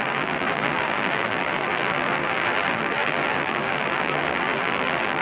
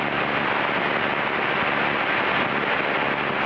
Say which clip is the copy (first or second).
first